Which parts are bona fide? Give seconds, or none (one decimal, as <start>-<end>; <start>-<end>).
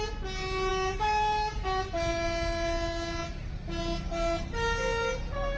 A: 0.0-0.7; 1.5-5.6